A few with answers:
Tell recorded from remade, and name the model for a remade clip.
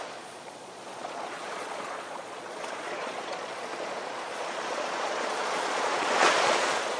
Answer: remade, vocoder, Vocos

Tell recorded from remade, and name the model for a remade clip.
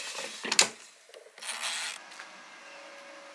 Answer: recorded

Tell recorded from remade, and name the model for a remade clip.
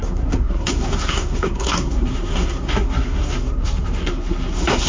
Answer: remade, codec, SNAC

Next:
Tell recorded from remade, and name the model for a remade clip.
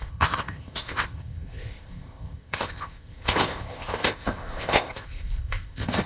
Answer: remade, codec, ZipCodec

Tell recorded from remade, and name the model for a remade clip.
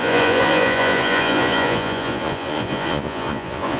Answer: remade, vocoder, Vocos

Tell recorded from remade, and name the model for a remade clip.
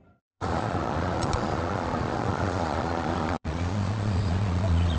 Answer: remade, vocoder, Vocos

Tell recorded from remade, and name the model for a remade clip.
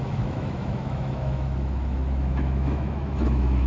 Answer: remade, autoencoder, DAC-VAE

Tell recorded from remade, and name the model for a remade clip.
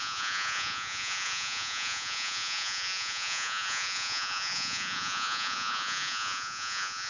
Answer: remade, vocoder, Vocos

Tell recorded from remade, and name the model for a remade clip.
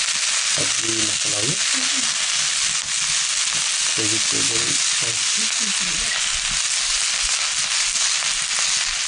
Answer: recorded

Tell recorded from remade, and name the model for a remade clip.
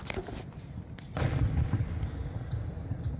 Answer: recorded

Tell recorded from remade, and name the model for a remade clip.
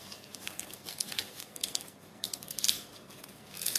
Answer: remade, codec, SNAC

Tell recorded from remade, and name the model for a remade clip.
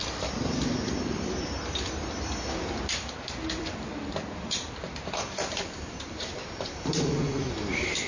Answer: remade, vocoder, BigVGAN v2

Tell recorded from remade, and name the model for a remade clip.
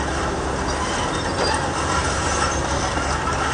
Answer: recorded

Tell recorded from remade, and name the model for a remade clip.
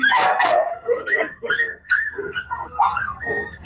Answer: remade, codec, SNAC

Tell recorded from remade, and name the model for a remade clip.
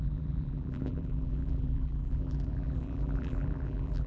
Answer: remade, vocoder, BigVGAN v2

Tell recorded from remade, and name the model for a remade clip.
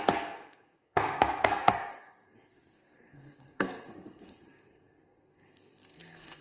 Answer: remade, codec, SNAC